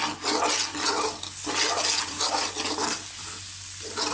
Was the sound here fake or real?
real